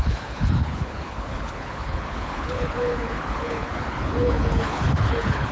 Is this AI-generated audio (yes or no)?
yes